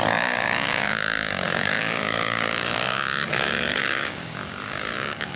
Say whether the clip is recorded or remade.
remade